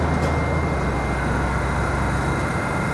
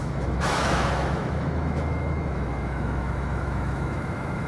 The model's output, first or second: second